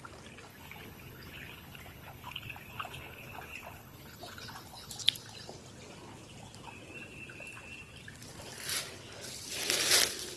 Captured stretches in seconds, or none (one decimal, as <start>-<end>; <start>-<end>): 0.0-0.5; 4.9-10.4